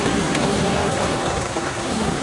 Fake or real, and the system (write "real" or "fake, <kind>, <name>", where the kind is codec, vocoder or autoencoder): fake, codec, SNAC